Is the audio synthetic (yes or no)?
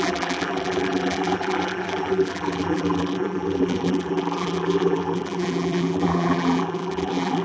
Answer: yes